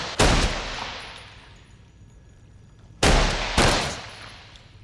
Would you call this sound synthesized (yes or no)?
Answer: no